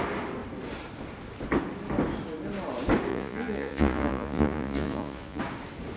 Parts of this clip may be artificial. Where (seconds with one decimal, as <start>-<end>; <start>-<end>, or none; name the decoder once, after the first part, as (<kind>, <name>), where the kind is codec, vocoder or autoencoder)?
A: 3.1-5.4 (vocoder, Vocos)